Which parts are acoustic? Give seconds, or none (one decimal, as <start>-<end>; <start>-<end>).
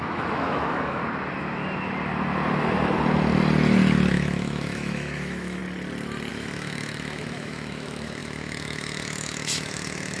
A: 1.0-4.1; 5.6-6.3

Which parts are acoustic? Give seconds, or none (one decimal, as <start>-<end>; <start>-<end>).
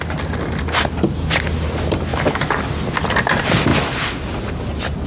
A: 0.0-2.1; 2.6-5.1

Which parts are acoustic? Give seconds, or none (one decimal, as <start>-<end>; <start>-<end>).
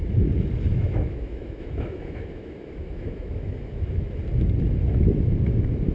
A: 0.0-0.7; 4.2-5.9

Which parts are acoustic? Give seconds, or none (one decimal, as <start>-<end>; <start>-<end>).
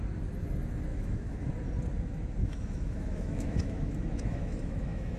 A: 0.0-0.9; 1.5-2.4